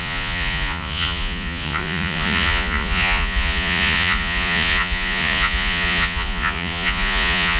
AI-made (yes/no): yes